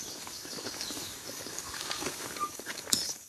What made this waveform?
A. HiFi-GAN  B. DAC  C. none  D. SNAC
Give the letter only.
B